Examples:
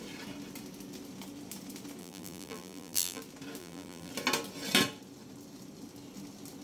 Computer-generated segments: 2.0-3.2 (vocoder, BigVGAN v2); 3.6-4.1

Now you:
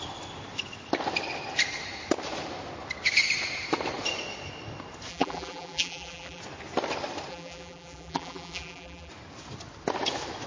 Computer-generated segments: 5.1-6.4 (vocoder, BigVGAN v2); 7.3-9.1

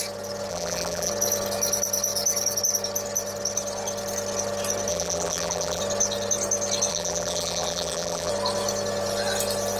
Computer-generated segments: 0.5-1.1 (vocoder, BigVGAN v2); 4.9-5.8; 6.9-8.3

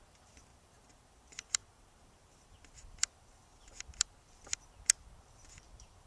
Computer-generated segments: 0.0-6.1 (vocoder, BigVGAN v2)

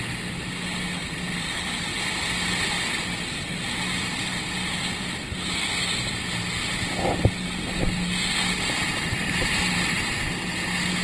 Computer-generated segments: 8.8-9.6 (vocoder, BigVGAN v2)